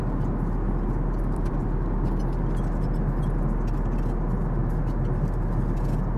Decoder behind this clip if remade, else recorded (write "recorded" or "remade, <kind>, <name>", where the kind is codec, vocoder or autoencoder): recorded